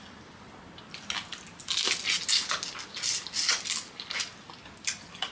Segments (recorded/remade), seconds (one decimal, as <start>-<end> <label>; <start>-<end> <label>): 0.0-5.3 recorded